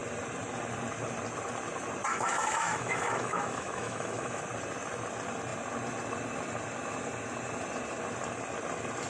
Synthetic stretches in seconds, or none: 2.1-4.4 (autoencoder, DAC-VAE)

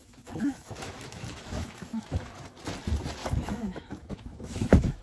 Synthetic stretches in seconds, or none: 0.0-2.6 (autoencoder, DAC-VAE); 3.2-5.0

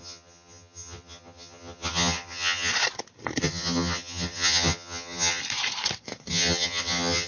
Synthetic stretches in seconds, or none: 0.0-2.7 (vocoder, HiFi-GAN); 3.4-5.4; 6.3-7.3

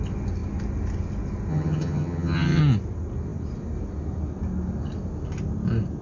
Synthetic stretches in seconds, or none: 1.5-2.6 (vocoder, HiFi-GAN)

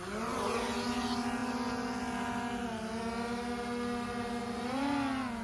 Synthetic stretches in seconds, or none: none

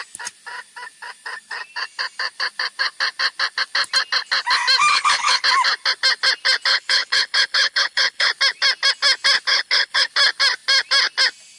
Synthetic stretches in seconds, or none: 4.9-5.4 (codec, HILCodec); 6.7-8.3; 9.5-10.1

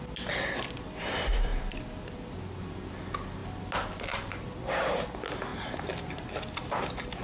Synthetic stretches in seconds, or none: none

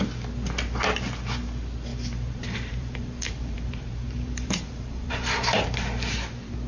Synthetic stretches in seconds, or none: 1.9-5.6 (vocoder, BigVGAN v2)